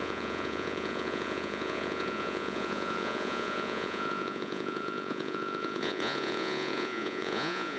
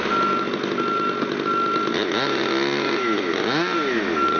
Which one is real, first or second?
second